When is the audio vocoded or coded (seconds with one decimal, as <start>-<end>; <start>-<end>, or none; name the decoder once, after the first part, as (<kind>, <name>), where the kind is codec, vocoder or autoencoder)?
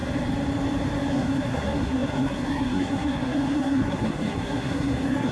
1.1-5.3 (codec, SNAC)